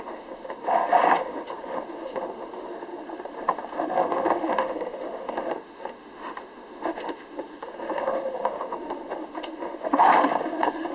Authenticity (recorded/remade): remade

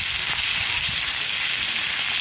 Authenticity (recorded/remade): recorded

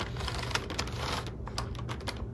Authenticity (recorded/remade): recorded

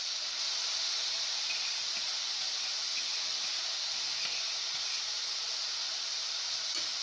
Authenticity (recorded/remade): recorded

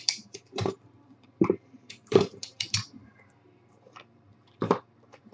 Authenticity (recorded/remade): remade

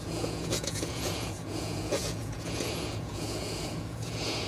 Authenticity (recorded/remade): remade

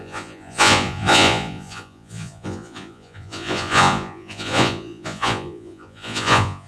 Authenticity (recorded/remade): remade